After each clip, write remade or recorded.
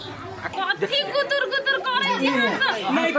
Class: recorded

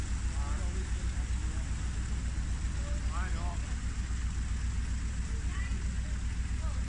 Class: recorded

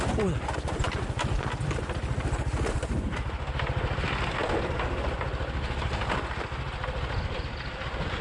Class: recorded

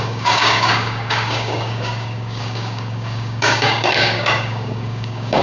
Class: remade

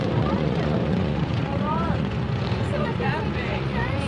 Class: remade